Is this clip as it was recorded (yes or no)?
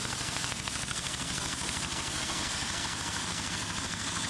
no